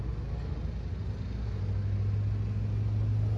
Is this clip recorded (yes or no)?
yes